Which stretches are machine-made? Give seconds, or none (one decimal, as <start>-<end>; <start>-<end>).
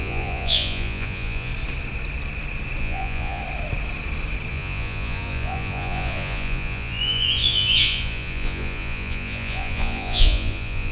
0.0-1.5; 2.8-3.4; 4.5-10.9